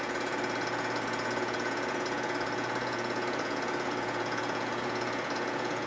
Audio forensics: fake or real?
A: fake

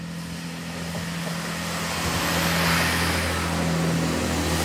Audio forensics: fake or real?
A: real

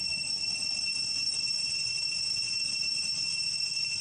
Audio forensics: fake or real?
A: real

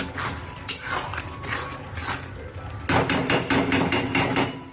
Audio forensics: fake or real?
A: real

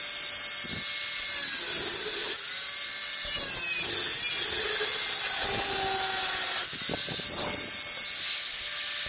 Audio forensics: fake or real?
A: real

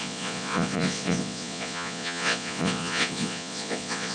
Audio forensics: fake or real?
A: fake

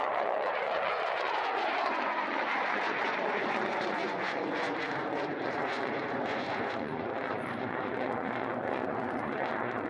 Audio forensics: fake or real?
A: fake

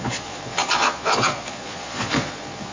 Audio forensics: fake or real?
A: fake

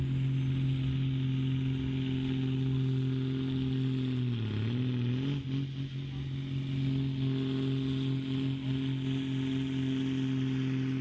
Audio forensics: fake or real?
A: real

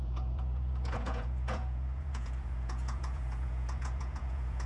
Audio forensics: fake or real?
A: fake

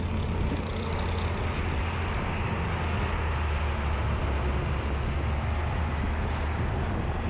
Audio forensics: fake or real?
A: real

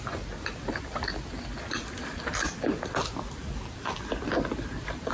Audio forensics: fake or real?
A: real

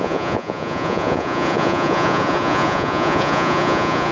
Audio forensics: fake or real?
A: fake